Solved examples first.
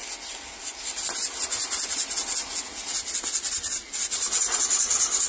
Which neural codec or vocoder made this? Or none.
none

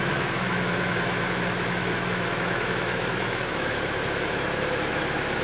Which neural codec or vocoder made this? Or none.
autoencoder, DAC-VAE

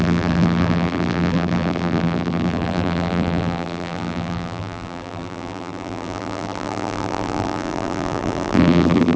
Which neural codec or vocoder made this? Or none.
vocoder, BigVGAN v2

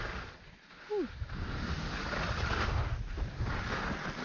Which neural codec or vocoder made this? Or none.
none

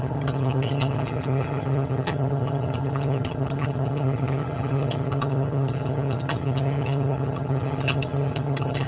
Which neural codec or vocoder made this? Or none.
vocoder, HiFi-GAN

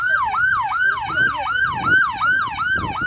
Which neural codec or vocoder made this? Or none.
none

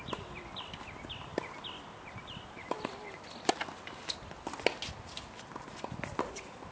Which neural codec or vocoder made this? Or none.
none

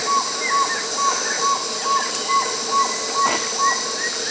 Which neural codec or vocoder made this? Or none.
none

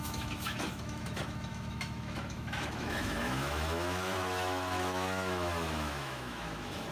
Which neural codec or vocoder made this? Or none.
autoencoder, DAC-VAE